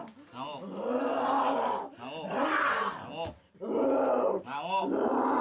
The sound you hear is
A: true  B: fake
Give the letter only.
A